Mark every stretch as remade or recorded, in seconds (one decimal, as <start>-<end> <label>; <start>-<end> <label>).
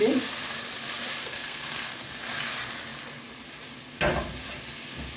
0.0-1.2 recorded; 1.2-2.1 remade; 2.1-5.2 recorded